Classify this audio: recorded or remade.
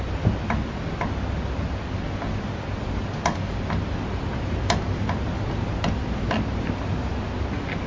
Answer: recorded